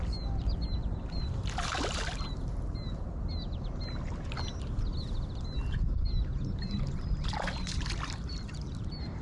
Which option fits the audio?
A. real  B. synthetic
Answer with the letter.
A